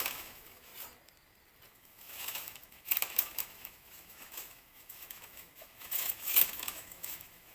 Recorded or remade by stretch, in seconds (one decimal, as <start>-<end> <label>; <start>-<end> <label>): 0.0-0.7 remade; 0.7-1.7 recorded; 1.7-7.5 remade